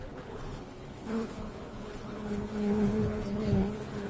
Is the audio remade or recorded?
remade